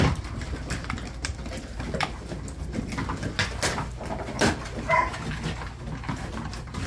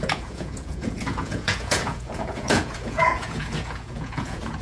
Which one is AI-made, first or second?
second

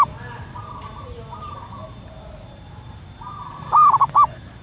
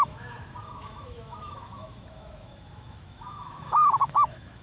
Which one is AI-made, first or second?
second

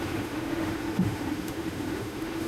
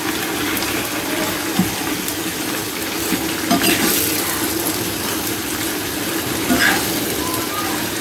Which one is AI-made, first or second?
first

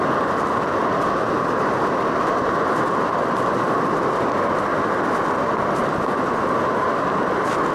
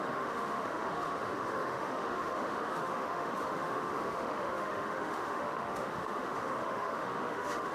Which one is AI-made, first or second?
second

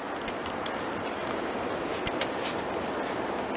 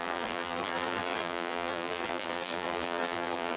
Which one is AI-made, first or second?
second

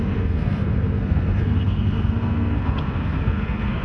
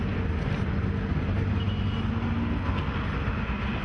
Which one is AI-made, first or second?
first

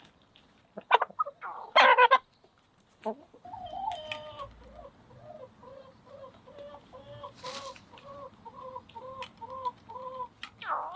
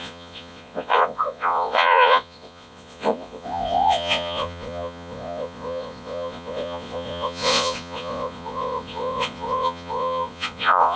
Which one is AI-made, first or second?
second